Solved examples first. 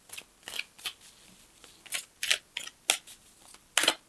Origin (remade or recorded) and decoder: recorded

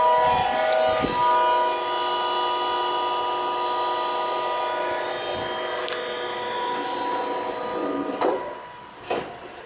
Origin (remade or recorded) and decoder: recorded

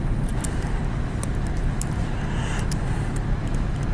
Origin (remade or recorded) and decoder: recorded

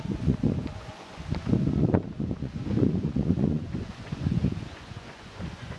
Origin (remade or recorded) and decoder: remade, vocoder, Vocos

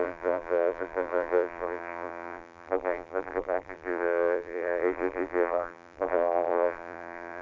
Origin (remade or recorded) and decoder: remade, vocoder, BigVGAN v2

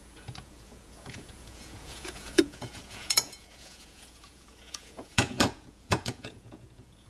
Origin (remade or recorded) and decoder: remade, vocoder, Vocos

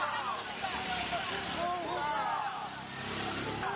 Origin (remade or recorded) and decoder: recorded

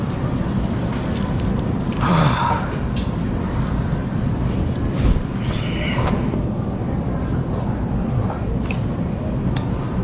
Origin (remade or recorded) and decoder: remade, vocoder, BigVGAN v2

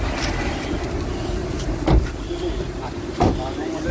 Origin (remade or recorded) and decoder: remade, vocoder, BigVGAN v2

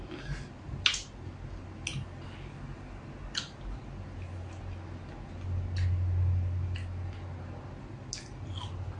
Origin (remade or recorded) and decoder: recorded